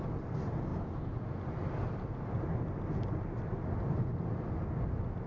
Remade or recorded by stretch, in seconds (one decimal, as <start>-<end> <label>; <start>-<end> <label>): 0.0-5.3 recorded